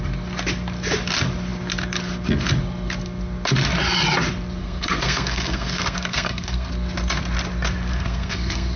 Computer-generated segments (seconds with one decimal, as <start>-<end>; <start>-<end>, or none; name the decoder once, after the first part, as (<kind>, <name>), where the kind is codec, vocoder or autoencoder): 4.6-6.7 (codec, SNAC); 7.9-8.8